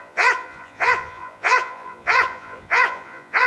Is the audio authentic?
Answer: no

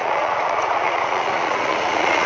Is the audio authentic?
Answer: no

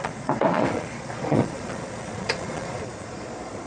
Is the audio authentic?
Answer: no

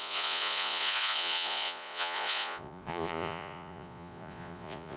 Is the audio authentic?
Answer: no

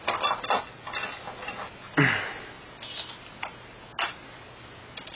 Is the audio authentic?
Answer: yes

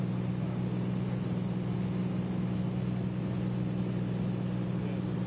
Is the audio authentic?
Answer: yes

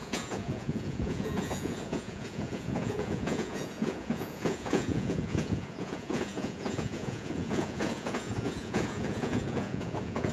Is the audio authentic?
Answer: no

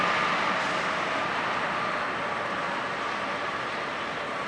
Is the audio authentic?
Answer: yes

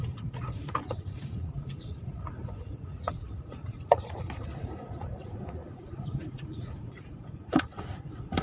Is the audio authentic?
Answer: no